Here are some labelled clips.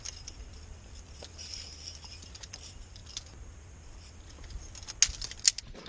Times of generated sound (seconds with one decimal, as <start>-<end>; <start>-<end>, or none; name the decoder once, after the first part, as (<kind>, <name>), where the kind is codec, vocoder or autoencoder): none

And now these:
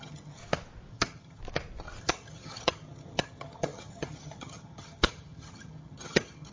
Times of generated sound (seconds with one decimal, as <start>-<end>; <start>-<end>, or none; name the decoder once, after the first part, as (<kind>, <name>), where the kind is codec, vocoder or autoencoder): 0.0-0.4 (vocoder, HiFi-GAN); 0.9-1.4; 2.0-6.5

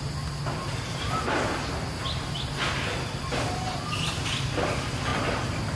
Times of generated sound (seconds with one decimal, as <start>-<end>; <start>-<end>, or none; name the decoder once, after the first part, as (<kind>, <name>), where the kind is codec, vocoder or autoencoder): none

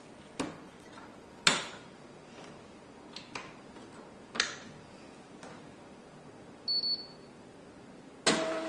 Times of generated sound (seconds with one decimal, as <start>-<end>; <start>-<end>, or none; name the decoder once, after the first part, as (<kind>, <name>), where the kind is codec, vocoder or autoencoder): 0.5-1.0 (vocoder, Vocos)

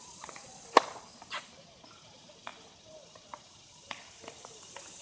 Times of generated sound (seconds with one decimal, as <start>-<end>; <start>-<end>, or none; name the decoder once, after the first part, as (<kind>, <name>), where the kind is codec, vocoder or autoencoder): none